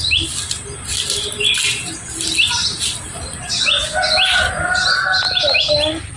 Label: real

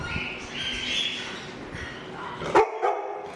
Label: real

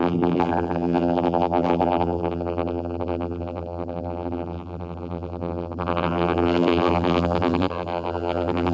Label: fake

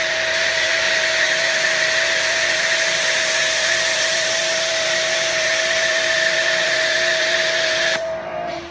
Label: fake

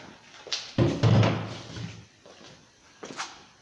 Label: real